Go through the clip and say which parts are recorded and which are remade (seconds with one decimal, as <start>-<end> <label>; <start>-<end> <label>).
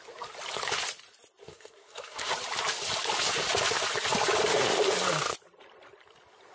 0.0-1.4 recorded; 1.4-2.3 remade; 2.3-6.5 recorded